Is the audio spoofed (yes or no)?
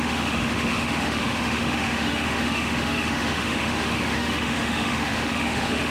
yes